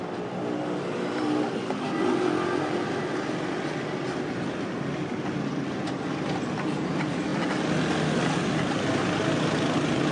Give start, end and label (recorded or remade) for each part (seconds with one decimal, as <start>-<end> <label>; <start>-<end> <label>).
0.0-10.1 recorded